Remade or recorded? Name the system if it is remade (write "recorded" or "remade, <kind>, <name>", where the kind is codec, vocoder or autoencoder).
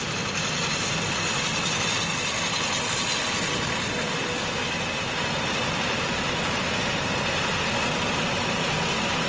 recorded